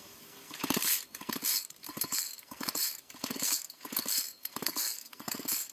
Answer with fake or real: fake